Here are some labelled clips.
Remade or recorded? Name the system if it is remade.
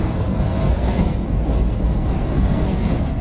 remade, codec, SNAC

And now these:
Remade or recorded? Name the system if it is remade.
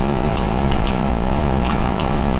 remade, vocoder, Vocos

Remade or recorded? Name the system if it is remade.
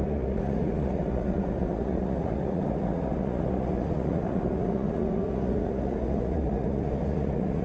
remade, vocoder, Vocos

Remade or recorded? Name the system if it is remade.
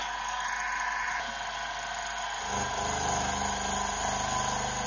recorded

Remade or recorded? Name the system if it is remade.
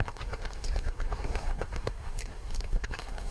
remade, codec, SNAC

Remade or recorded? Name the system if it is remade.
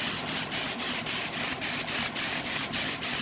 recorded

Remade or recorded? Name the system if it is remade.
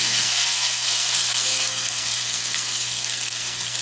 remade, codec, SNAC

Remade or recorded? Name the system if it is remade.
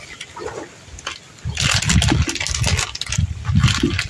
recorded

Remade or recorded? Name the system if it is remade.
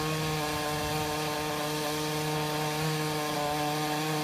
recorded